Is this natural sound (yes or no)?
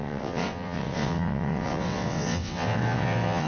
no